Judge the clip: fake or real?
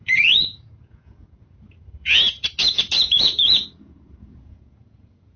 fake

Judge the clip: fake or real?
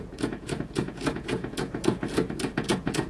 fake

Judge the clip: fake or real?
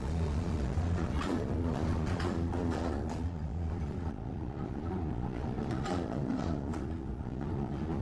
fake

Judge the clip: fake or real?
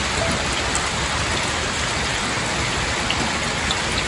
real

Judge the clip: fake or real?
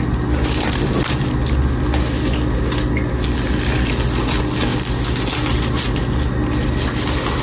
real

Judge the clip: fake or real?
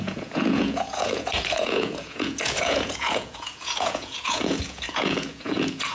fake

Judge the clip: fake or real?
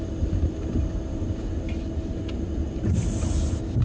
real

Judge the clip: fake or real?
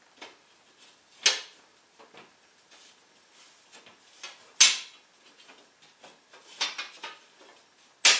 real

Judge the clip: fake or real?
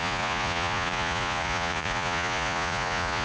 fake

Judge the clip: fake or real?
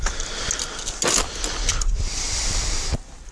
real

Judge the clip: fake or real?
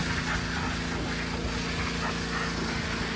real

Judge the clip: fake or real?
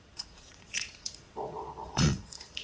fake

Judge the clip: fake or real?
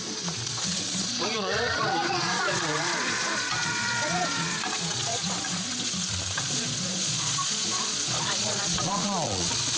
fake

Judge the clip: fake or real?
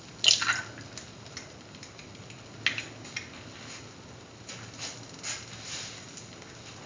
real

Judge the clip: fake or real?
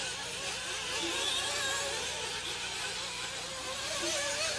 real